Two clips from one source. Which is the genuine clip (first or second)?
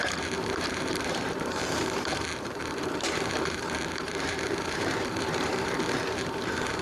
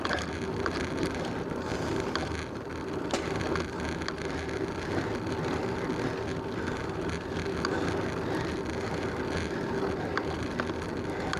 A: second